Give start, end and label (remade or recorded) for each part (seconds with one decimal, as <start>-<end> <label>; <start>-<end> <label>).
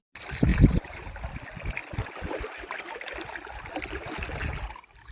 0.0-0.5 recorded; 0.5-1.4 remade; 1.4-5.1 recorded